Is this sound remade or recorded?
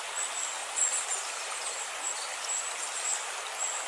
recorded